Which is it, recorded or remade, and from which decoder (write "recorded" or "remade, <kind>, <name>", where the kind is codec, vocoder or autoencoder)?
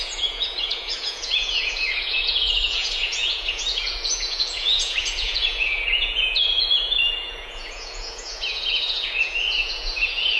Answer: remade, vocoder, Vocos